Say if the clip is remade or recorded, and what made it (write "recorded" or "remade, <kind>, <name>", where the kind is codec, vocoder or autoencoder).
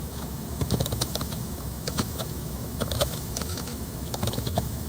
remade, autoencoder, DAC-VAE